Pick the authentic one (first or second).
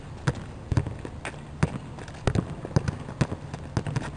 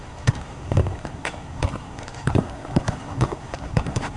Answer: first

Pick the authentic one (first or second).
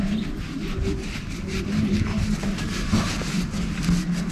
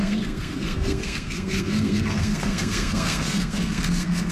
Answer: first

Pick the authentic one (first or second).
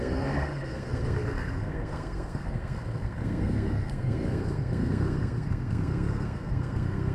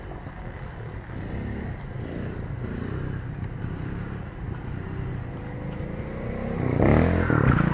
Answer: second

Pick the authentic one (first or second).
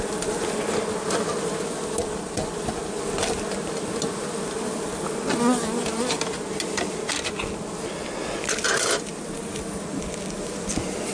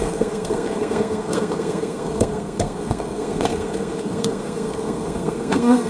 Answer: first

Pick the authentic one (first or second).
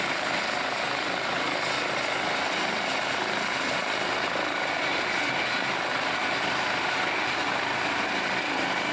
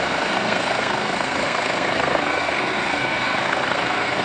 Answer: first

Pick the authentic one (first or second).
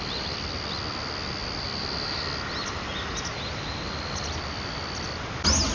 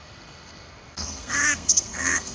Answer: first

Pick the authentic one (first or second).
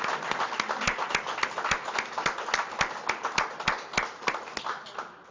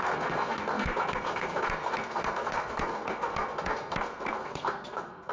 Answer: first